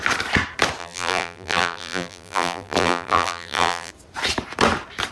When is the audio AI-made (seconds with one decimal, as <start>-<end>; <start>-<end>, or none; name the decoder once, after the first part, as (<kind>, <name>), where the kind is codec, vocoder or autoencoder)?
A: 0.8-3.9 (vocoder, BigVGAN v2)